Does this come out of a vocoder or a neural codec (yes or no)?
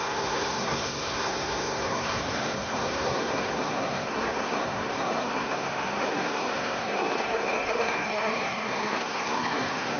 yes